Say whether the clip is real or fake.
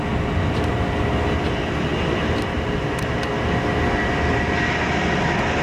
real